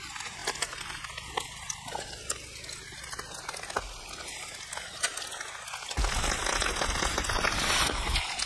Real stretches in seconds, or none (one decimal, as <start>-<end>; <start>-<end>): 0.0-8.5